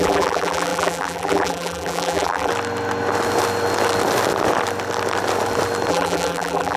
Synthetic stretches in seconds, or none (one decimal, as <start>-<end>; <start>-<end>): 0.0-2.5; 5.9-6.8